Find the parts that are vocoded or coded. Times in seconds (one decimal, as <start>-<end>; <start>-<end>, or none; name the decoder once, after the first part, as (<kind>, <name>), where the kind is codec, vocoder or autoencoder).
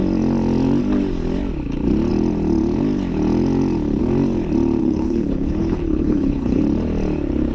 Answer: 4.8-6.6 (codec, HILCodec)